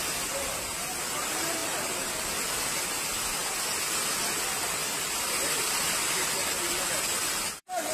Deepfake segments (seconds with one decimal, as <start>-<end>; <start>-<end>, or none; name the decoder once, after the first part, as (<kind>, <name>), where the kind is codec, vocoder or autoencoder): 1.6-2.1 (vocoder, BigVGAN v2); 4.8-6.3